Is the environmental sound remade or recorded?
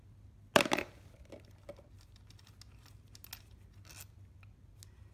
recorded